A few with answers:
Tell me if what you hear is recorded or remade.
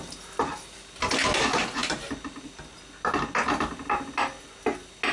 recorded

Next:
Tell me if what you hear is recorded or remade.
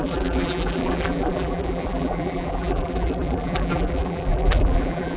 remade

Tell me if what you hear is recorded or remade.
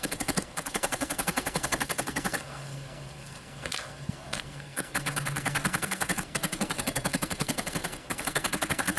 remade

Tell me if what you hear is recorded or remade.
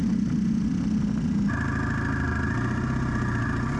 recorded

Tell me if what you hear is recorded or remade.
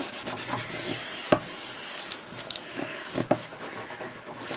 remade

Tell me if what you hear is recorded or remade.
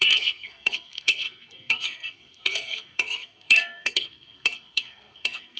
remade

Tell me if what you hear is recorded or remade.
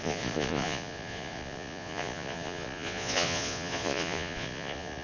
remade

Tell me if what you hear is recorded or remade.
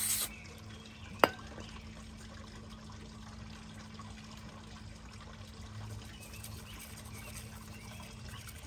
recorded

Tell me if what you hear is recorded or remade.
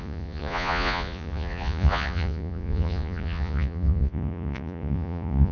remade